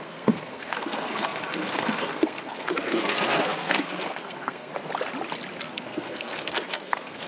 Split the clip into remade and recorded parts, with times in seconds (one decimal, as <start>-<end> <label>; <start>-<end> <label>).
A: 0.0-4.7 remade; 4.7-5.6 recorded; 5.6-7.3 remade